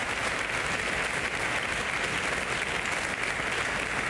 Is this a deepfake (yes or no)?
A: no